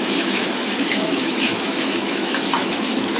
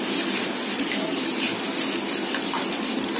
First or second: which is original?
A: second